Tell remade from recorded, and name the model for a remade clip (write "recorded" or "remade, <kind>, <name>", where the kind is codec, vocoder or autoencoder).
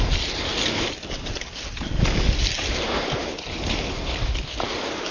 recorded